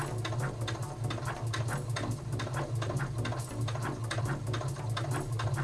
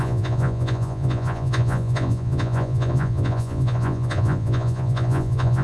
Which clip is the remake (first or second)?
second